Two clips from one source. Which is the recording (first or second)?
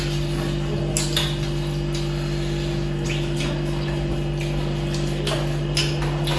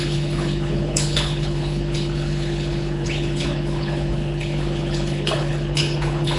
first